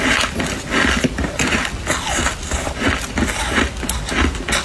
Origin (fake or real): real